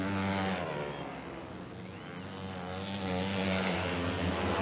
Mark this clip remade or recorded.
recorded